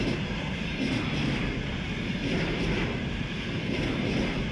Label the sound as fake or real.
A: real